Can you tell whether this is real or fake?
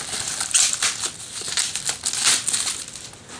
real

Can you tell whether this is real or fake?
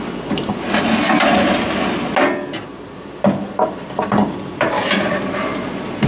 real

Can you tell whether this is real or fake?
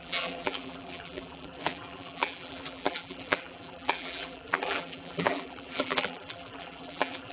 fake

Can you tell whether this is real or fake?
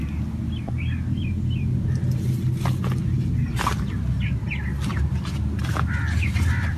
real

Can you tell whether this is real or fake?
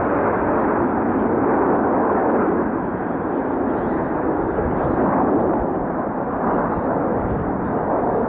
real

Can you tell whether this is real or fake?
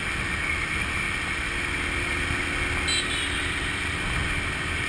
real